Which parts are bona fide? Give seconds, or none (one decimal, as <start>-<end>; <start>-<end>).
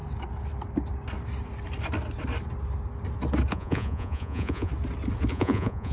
0.0-3.5; 4.7-5.3